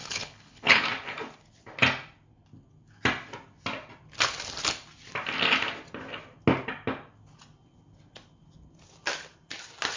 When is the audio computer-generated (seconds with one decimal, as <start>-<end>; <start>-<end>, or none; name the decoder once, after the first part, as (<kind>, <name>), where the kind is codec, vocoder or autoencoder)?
0.0-0.8 (codec, HILCodec)